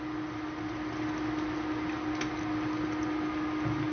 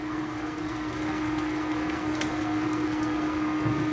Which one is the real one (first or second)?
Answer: first